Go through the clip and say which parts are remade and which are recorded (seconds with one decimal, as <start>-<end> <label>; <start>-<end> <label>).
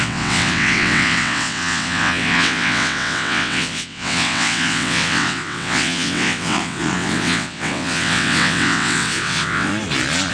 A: 0.0-9.7 remade; 9.7-10.3 recorded